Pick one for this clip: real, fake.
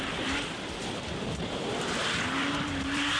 fake